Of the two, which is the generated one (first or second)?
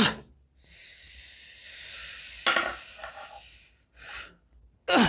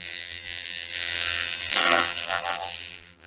second